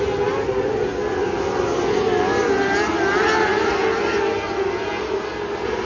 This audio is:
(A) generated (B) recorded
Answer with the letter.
B